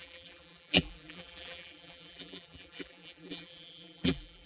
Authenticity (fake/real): fake